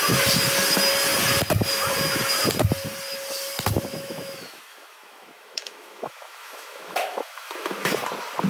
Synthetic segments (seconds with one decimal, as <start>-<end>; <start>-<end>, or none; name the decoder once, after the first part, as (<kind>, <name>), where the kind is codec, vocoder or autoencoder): 3.9-7.9 (autoencoder, DAC-VAE)